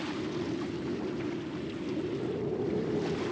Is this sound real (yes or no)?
yes